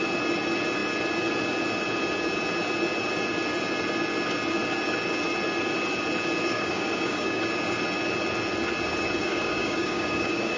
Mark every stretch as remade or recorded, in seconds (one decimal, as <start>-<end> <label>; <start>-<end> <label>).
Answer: 0.0-6.5 recorded; 6.5-7.4 remade; 7.4-9.2 recorded; 9.2-10.6 remade